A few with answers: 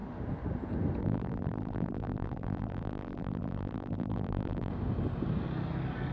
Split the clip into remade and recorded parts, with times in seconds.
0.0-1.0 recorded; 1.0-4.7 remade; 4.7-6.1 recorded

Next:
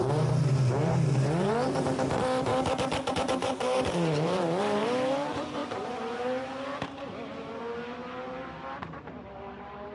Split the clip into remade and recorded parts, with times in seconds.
0.0-2.5 remade; 2.5-3.1 recorded; 3.1-9.9 remade

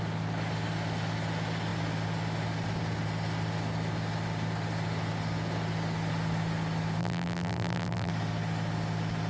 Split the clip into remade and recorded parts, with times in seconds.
0.0-7.0 recorded; 7.0-8.1 remade; 8.1-9.3 recorded

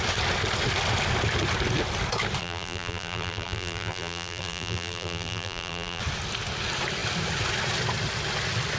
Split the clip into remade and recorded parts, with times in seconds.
0.0-2.4 recorded; 2.4-6.0 remade; 6.0-8.8 recorded

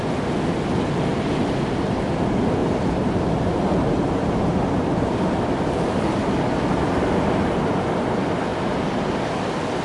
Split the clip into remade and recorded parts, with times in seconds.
0.0-1.1 recorded; 1.1-1.9 remade; 1.9-2.6 recorded; 2.6-6.3 remade; 6.3-8.5 recorded; 8.5-9.1 remade; 9.1-9.8 recorded